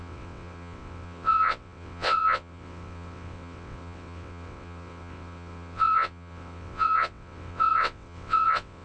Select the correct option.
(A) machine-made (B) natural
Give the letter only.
A